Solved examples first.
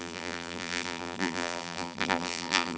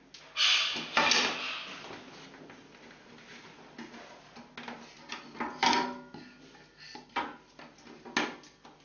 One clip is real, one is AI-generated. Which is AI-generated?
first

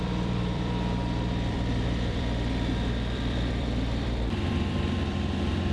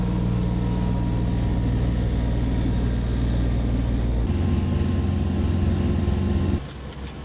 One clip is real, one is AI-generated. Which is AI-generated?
first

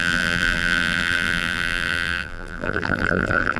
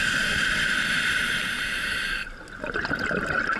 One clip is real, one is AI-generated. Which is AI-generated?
first